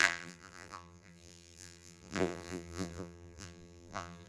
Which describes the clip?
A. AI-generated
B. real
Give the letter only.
A